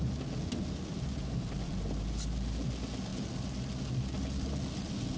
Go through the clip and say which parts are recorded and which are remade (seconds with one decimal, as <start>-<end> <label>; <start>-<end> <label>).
0.0-5.2 recorded

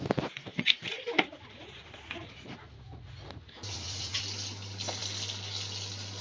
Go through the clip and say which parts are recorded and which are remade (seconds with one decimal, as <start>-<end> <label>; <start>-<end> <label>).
0.0-0.5 recorded; 0.5-4.2 remade; 4.2-6.2 recorded

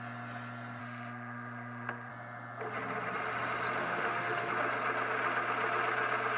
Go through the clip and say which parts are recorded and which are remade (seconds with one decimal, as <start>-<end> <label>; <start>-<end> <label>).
0.0-0.8 recorded; 0.8-2.1 remade; 2.1-3.8 recorded; 3.8-4.5 remade; 4.5-6.4 recorded

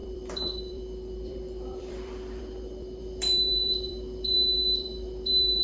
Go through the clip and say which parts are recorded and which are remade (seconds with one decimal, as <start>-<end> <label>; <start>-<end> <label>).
0.0-2.4 remade; 2.4-3.0 recorded; 3.0-5.6 remade

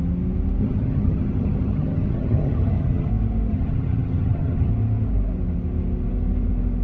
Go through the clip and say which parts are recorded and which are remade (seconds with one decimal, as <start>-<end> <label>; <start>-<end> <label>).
0.0-0.6 recorded; 0.6-3.1 remade; 3.1-3.5 recorded; 3.5-4.7 remade; 4.7-6.8 recorded